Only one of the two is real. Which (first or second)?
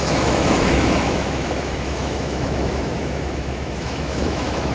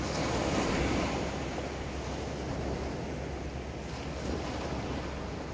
second